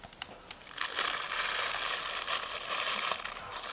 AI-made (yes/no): no